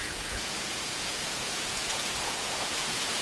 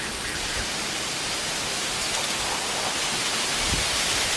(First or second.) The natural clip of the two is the second